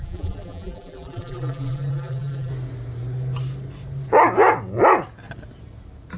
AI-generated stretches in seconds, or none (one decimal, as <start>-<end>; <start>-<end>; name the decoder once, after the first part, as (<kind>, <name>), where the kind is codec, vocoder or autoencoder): 0.0-2.5 (vocoder, BigVGAN v2)